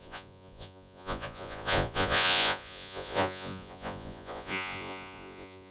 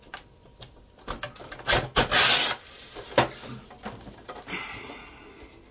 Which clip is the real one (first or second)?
second